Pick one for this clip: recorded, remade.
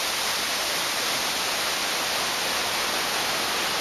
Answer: recorded